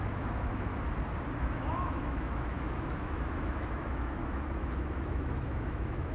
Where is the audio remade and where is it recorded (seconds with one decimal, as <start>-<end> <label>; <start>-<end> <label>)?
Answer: 0.0-0.7 remade; 0.7-1.4 recorded; 1.4-6.1 remade

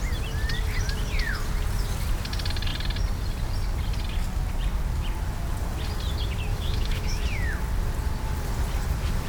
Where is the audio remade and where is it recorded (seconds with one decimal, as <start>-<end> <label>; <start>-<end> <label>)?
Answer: 0.0-6.5 recorded; 6.5-7.2 remade; 7.2-9.3 recorded